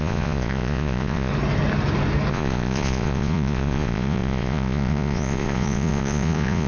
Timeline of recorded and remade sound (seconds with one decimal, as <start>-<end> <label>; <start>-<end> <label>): 0.0-1.3 remade; 1.3-2.3 recorded; 2.3-6.7 remade